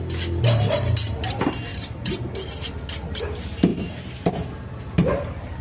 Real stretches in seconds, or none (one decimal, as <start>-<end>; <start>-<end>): 0.0-5.6